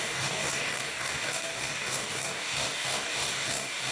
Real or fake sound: fake